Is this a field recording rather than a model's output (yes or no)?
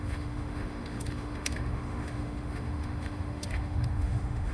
no